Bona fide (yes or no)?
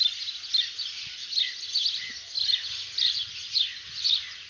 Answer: yes